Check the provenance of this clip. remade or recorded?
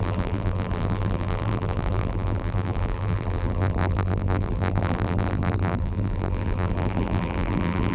remade